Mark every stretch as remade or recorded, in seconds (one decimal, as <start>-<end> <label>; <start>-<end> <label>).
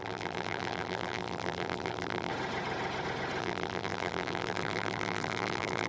0.0-2.3 remade; 2.3-3.4 recorded; 3.4-5.9 remade